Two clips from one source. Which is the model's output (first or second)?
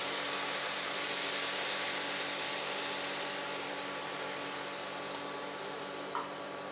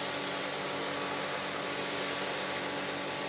first